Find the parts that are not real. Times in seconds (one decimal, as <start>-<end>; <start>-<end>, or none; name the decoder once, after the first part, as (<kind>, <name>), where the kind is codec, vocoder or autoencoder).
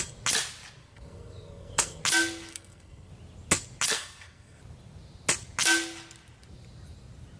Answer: 0.8-2.0 (codec, SNAC); 2.5-3.1; 3.9-4.6